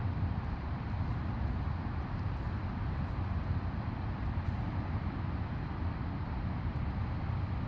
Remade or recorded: remade